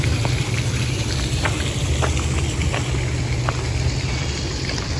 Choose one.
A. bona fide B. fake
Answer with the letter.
B